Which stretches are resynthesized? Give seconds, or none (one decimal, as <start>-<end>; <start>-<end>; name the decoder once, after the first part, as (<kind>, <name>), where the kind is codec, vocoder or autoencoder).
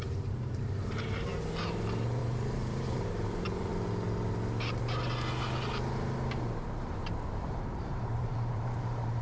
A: 0.0-1.3 (vocoder, BigVGAN v2); 2.2-3.7; 6.8-9.2